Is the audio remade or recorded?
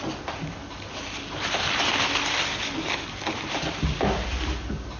recorded